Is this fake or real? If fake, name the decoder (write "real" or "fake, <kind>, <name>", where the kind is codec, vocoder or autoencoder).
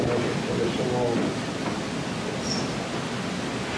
real